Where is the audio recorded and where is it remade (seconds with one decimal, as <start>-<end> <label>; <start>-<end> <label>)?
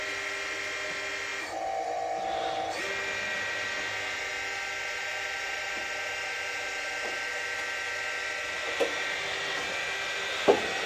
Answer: 0.0-10.9 recorded